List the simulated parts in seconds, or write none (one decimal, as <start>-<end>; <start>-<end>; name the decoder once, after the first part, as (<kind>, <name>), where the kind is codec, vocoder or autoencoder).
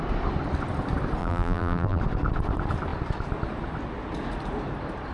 1.2-2.0 (vocoder, BigVGAN v2)